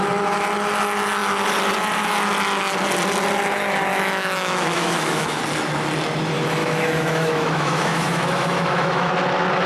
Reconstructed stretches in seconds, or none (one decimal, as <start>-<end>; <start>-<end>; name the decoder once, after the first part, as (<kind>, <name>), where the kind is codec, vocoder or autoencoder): 3.9-5.4 (autoencoder, DAC-VAE); 6.6-9.1